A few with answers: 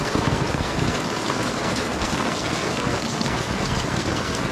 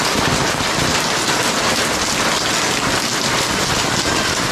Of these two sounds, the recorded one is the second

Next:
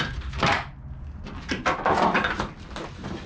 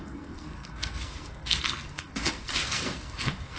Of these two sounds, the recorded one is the first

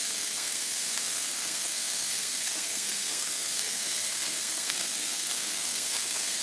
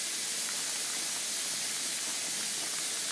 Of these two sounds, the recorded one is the second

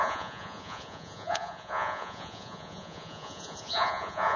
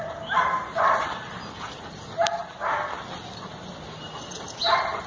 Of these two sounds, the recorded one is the second